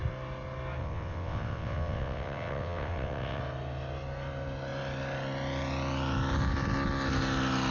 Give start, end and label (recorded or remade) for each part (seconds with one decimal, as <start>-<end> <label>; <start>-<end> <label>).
0.0-0.8 recorded; 0.8-3.4 remade; 3.4-7.7 recorded